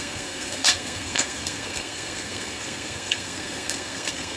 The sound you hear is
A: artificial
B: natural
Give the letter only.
A